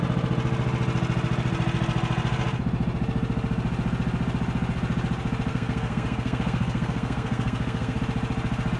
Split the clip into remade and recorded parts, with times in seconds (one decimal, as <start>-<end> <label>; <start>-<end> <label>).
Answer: 0.0-5.5 recorded; 5.5-8.0 remade; 8.0-8.8 recorded

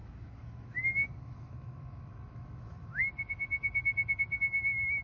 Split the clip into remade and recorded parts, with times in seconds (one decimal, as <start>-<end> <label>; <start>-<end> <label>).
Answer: 0.0-3.0 remade; 3.0-5.0 recorded